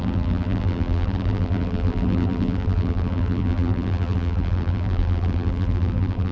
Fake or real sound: fake